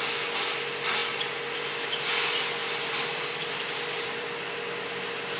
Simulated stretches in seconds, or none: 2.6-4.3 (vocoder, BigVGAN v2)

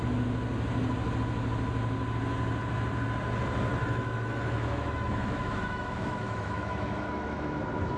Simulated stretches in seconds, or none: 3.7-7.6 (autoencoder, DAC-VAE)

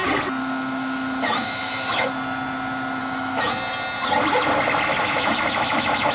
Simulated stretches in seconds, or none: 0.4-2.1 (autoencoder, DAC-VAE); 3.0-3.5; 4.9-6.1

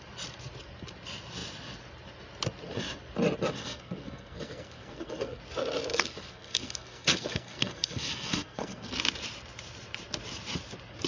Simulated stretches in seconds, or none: 3.6-5.4 (codec, SNAC); 5.9-8.9

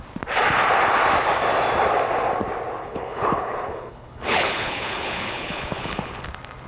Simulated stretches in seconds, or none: 2.8-6.2 (codec, HILCodec)